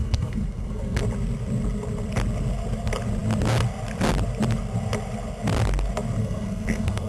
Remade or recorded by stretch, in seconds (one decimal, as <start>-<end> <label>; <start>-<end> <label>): 0.0-1.0 remade; 1.0-6.2 recorded; 6.2-7.1 remade